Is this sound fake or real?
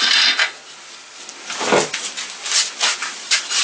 real